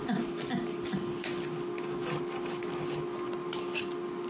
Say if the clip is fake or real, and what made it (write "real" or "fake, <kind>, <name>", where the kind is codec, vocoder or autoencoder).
real